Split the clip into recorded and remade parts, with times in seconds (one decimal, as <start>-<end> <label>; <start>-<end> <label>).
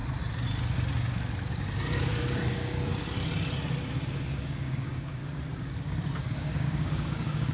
0.0-2.0 recorded; 2.0-2.9 remade; 2.9-4.4 recorded; 4.4-5.2 remade; 5.2-6.2 recorded; 6.2-7.5 remade